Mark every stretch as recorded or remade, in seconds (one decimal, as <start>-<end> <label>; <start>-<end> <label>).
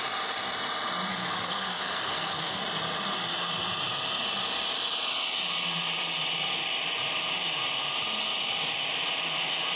0.0-1.1 recorded; 1.1-2.6 remade; 2.6-9.8 recorded